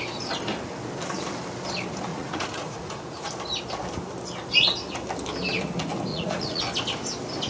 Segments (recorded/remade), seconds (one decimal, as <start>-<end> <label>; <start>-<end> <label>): 0.0-2.1 recorded; 2.1-3.3 remade; 3.3-6.1 recorded; 6.1-6.6 remade; 6.6-7.5 recorded